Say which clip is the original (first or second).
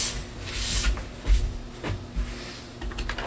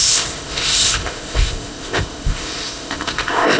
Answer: first